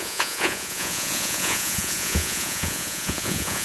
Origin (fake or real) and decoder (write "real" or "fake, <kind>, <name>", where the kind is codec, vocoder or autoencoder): fake, vocoder, Vocos